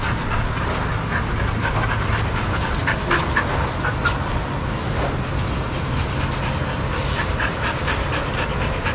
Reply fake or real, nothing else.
real